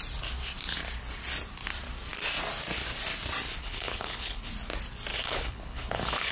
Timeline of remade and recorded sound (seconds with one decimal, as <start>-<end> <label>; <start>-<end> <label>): 0.0-3.6 recorded; 3.6-4.5 remade; 4.5-5.1 recorded; 5.1-6.3 remade